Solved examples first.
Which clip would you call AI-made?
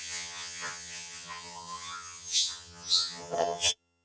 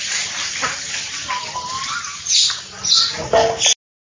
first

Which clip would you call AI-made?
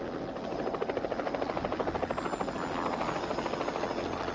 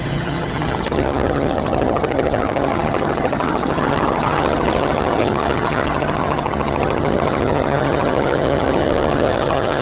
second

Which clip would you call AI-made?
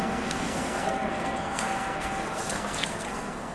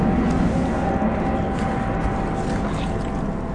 first